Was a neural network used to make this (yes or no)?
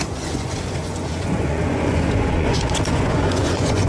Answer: yes